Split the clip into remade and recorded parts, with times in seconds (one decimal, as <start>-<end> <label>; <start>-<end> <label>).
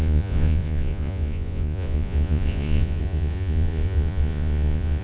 0.0-5.0 remade